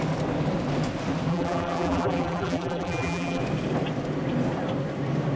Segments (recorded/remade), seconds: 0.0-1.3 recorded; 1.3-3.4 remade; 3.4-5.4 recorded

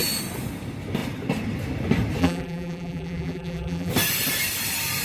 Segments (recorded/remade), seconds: 0.0-2.2 recorded; 2.2-3.9 remade; 3.9-5.0 recorded

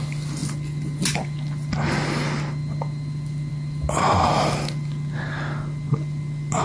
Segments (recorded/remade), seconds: 0.0-6.6 recorded

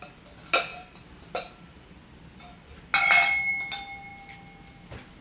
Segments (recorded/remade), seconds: 0.0-0.7 recorded; 0.7-2.0 remade; 2.0-5.2 recorded